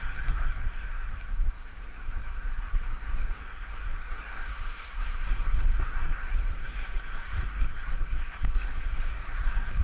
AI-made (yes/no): yes